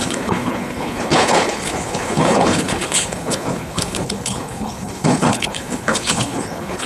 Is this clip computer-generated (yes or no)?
yes